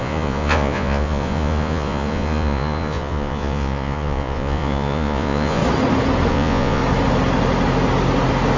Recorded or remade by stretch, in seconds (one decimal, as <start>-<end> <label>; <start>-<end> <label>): 0.0-5.6 remade; 5.6-6.3 recorded; 6.3-6.8 remade; 6.8-8.6 recorded